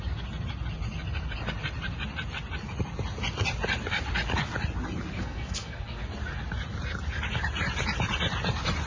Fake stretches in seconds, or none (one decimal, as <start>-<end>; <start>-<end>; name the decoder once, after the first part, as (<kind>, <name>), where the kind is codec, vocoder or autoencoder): 5.2-6.0 (codec, SNAC)